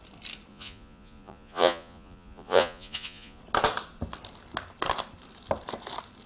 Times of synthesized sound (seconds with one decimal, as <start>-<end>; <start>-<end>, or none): 0.5-3.4